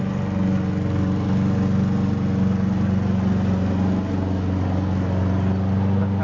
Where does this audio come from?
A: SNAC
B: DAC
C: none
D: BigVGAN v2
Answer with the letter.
C